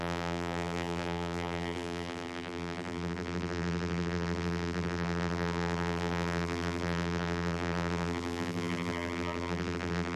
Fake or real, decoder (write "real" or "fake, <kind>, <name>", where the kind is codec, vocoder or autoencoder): fake, vocoder, BigVGAN v2